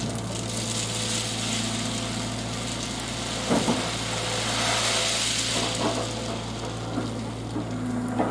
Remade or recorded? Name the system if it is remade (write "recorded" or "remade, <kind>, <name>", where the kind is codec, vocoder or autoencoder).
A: recorded